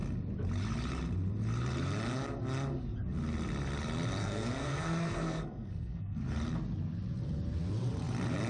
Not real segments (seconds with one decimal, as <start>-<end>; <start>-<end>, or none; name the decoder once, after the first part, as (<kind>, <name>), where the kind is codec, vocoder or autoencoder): 4.2-6.2 (codec, SNAC)